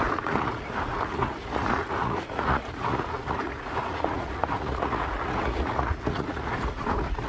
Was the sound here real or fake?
fake